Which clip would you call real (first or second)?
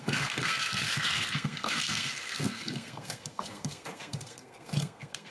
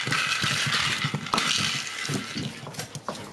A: second